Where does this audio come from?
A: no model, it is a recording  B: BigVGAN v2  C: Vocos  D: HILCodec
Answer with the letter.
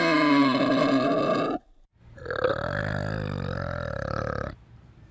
A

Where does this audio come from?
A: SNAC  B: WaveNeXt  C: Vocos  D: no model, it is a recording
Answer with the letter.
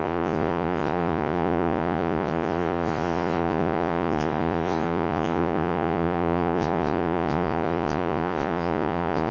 C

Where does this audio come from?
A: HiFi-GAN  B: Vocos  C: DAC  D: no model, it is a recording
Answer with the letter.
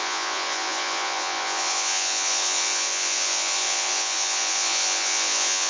B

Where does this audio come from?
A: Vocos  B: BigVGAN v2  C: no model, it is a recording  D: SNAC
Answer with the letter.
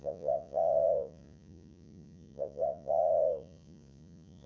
A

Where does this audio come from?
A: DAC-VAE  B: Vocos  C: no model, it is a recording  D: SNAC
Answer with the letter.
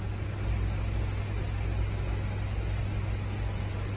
C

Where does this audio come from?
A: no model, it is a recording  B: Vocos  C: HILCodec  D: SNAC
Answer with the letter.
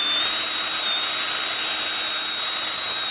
A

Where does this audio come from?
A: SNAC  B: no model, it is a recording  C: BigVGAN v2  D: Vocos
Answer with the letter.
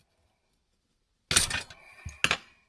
B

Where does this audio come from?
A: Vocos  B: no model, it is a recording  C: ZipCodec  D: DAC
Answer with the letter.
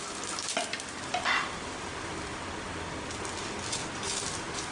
B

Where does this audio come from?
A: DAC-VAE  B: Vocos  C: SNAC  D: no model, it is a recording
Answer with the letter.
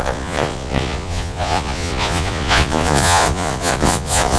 B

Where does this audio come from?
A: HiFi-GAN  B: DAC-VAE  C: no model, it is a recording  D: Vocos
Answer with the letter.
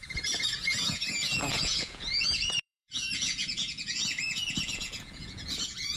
D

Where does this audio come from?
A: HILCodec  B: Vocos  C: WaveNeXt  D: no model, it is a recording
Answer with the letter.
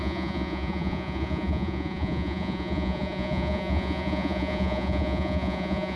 B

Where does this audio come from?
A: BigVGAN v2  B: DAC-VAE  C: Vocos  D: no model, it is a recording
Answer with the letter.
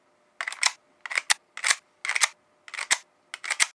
D